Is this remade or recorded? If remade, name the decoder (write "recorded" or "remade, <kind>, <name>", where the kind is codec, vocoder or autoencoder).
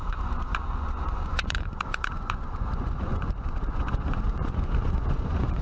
remade, vocoder, Vocos